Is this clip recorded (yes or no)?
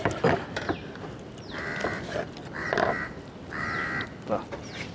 no